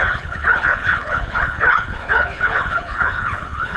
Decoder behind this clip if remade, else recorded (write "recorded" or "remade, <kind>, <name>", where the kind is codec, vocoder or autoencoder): remade, codec, HILCodec